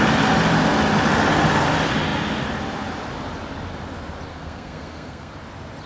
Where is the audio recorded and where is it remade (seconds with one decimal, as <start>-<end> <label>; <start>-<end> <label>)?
0.0-4.3 recorded; 4.3-5.3 remade; 5.3-5.9 recorded